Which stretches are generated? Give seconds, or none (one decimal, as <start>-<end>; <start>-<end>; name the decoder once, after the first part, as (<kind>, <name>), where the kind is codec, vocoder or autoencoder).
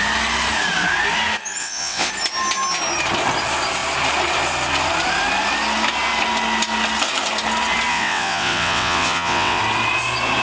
1.6-2.1 (vocoder, WaveNeXt); 7.9-9.6